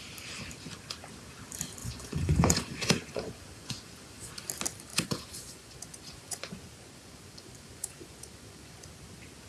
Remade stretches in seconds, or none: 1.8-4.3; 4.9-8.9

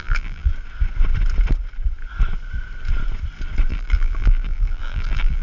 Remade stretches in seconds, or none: 0.0-0.5; 3.7-5.4

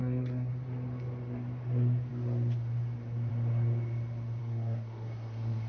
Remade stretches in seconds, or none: 0.0-0.5; 4.4-5.7

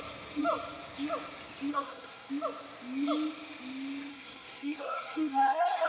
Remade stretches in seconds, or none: 1.7-2.3; 4.1-5.9